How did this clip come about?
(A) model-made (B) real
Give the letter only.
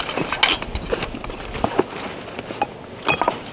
B